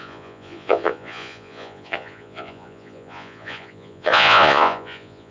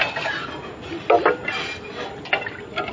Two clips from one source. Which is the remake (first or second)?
first